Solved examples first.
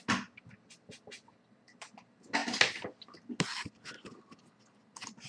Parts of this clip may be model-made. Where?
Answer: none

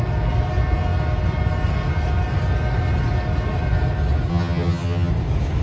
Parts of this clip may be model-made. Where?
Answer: 4.3-5.1

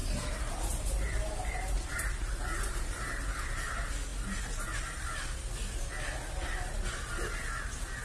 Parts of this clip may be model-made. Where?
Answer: 0.0-3.4

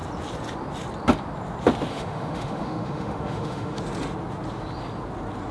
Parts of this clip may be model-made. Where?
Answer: 1.9-3.8

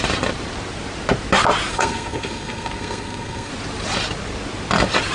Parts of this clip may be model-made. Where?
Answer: 1.7-3.5

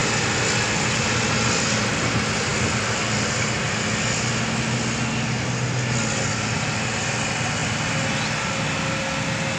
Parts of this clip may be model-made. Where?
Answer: none

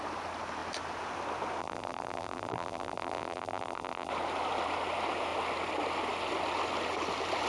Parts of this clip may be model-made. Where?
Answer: 1.6-4.1